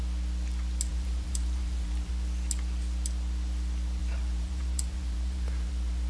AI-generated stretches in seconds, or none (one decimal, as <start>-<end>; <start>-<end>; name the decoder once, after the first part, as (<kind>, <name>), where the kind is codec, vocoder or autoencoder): 0.9-2.1 (vocoder, BigVGAN v2); 4.0-6.1